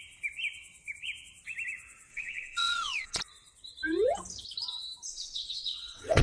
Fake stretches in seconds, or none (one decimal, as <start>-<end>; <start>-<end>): 2.1-3.2; 5.1-6.2